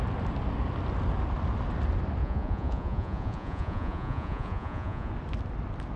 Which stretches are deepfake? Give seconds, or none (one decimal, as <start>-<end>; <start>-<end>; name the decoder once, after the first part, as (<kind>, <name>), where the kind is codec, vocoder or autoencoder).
2.2-5.1 (vocoder, Vocos)